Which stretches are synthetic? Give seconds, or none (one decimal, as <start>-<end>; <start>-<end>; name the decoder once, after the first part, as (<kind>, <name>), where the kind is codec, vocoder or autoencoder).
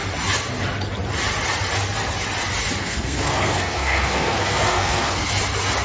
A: 2.8-5.3 (codec, SNAC)